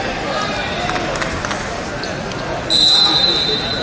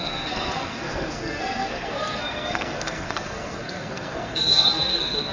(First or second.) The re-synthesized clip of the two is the second